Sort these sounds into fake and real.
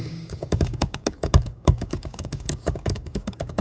fake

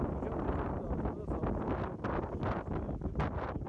real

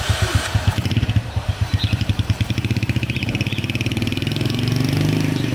fake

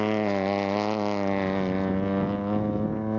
real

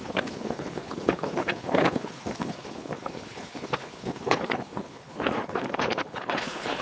fake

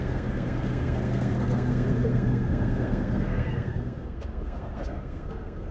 fake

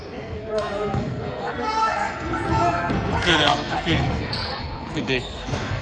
fake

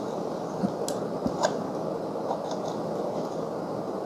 real